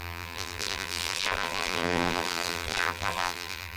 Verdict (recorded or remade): remade